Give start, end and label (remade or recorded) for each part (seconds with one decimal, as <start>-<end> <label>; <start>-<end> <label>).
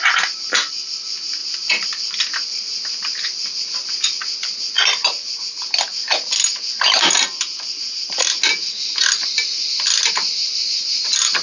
0.0-1.4 recorded; 1.4-5.4 remade; 5.4-5.9 recorded; 5.9-8.4 remade; 8.4-11.4 recorded